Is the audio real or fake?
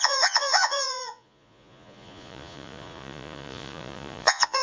fake